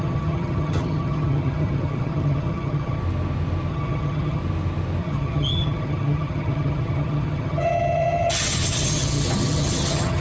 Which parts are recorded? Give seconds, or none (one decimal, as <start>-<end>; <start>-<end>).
3.0-3.7; 4.4-5.0